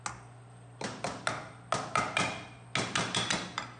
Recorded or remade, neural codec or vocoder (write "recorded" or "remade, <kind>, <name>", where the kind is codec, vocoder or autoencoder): recorded